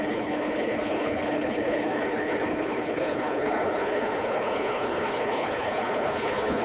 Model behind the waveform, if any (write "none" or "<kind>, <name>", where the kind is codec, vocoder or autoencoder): codec, HILCodec